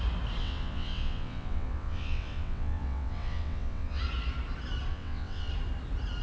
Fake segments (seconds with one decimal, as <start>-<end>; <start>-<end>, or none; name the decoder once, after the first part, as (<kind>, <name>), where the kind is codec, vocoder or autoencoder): 0.4-4.0 (vocoder, WaveNeXt); 4.9-5.5